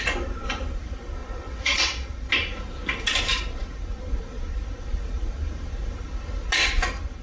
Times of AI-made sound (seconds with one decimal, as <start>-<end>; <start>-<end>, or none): 1.2-2.3